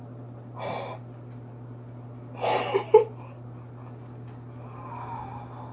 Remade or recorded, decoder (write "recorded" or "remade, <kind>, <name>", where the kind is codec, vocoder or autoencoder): recorded